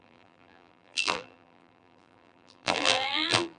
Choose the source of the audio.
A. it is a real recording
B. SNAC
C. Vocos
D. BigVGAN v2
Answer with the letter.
D